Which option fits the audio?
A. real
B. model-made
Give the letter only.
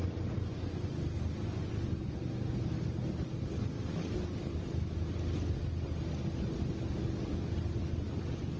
A